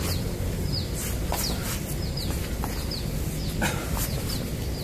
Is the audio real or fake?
real